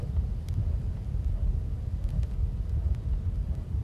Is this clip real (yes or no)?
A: yes